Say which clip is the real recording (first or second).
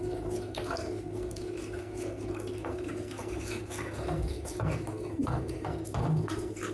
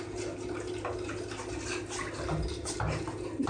second